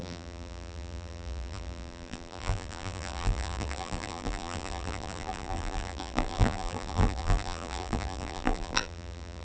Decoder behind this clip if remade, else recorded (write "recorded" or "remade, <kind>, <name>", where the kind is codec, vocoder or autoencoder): remade, vocoder, BigVGAN v2